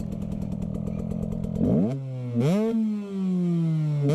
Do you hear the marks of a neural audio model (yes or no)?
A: no